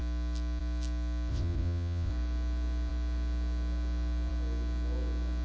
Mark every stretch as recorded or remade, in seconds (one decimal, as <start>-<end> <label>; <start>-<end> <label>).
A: 0.0-1.3 recorded; 1.3-2.1 remade; 2.1-5.4 recorded